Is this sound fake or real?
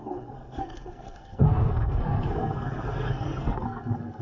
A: fake